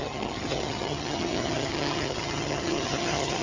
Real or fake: fake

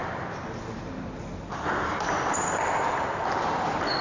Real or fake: real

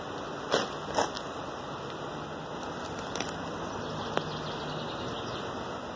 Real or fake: real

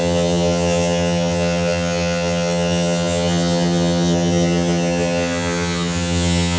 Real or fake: fake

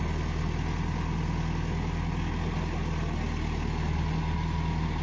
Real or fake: real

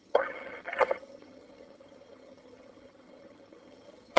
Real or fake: fake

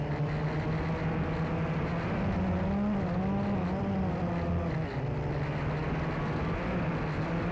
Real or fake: real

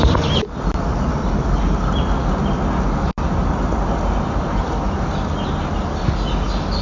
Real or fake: real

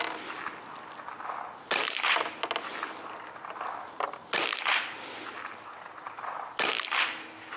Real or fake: real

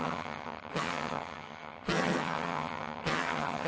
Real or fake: fake